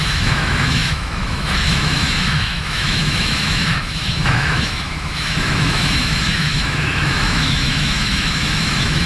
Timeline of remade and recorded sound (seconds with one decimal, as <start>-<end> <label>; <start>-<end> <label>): 0.0-9.1 remade